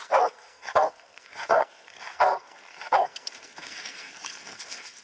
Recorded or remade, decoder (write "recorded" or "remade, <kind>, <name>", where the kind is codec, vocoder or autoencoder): remade, codec, SNAC